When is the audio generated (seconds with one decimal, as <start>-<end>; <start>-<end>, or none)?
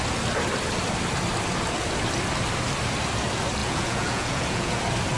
3.6-4.8